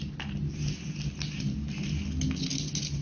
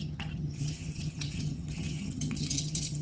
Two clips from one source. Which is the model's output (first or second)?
second